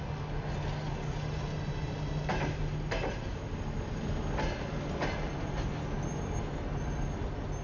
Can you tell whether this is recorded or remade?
recorded